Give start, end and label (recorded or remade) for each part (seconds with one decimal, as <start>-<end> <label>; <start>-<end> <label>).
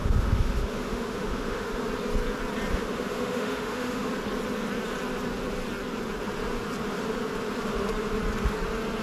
0.0-1.8 remade; 1.8-2.7 recorded; 2.7-4.1 remade; 4.1-9.0 recorded